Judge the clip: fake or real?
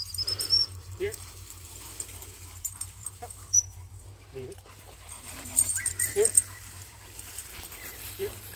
fake